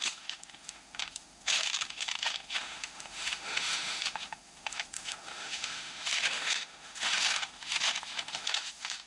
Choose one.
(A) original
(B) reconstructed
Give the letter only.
B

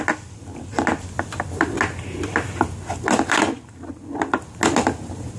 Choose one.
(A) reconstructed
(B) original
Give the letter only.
B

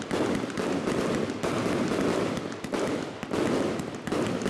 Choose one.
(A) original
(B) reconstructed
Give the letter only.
A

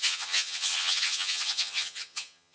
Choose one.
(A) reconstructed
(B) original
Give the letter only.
A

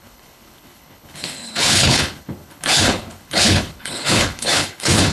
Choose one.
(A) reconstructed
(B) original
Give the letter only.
A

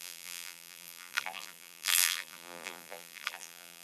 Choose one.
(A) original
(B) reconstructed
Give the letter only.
B